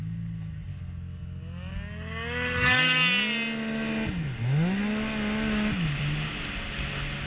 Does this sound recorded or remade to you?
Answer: recorded